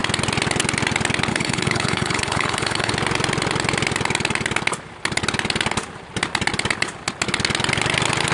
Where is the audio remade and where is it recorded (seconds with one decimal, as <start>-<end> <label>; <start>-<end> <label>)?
0.0-1.3 recorded; 1.3-2.9 remade; 2.9-8.3 recorded